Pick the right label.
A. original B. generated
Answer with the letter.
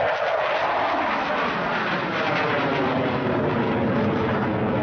A